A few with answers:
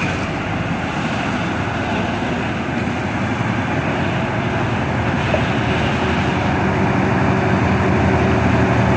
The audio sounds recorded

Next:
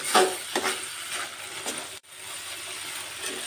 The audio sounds recorded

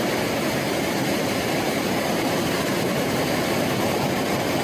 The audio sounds remade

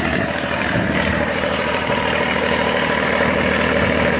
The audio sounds remade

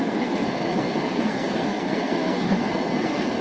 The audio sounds remade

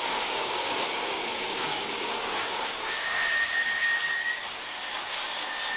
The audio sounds remade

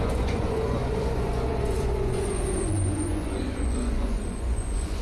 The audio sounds remade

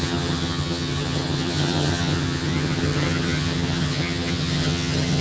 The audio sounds remade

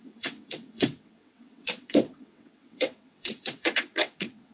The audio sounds remade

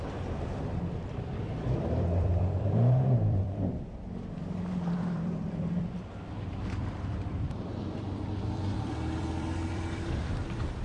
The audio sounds remade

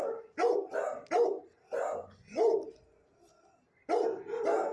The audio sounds recorded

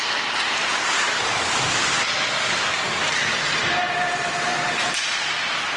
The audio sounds recorded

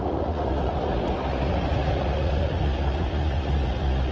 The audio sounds remade